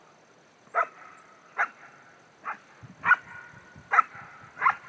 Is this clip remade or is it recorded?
recorded